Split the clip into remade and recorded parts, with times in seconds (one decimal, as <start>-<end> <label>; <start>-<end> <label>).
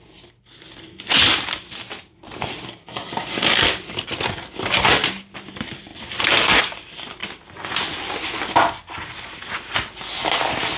0.0-10.8 recorded